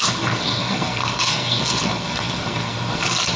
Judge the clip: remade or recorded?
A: remade